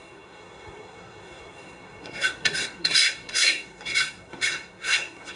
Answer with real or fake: fake